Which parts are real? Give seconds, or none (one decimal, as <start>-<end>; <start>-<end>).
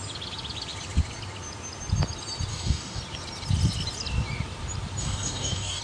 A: 0.0-2.5; 3.0-5.0